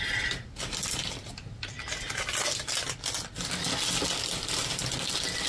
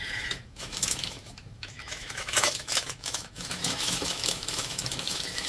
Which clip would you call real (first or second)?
first